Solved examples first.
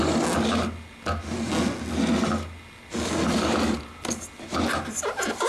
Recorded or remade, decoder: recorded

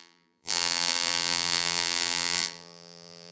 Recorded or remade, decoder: remade, vocoder, BigVGAN v2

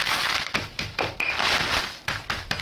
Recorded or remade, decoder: remade, vocoder, BigVGAN v2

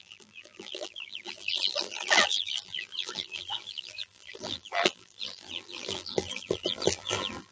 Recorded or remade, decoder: remade, vocoder, BigVGAN v2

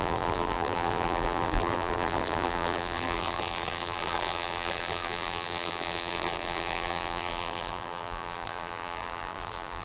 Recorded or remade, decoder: remade, vocoder, BigVGAN v2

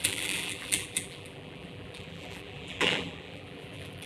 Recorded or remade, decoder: remade, vocoder, BigVGAN v2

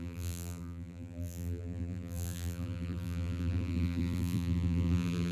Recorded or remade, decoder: remade, vocoder, BigVGAN v2